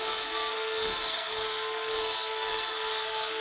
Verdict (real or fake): fake